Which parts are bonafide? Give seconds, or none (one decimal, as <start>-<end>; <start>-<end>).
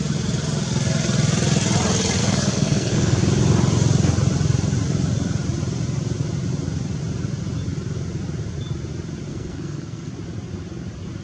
0.0-2.2; 3.2-9.3; 10.1-11.2